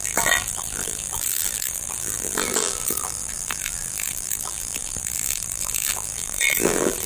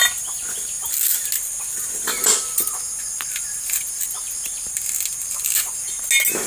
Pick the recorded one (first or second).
second